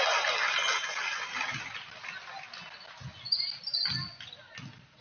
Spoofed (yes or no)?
no